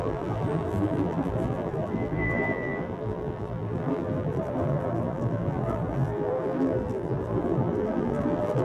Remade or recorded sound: remade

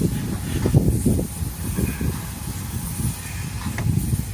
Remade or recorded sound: recorded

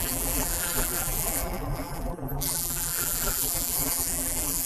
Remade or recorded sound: remade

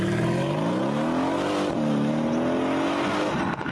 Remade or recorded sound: recorded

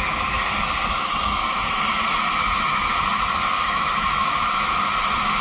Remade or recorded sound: remade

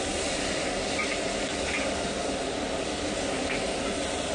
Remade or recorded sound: recorded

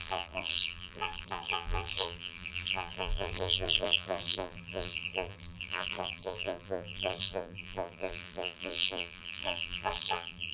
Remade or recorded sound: remade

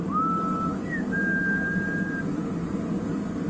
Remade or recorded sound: recorded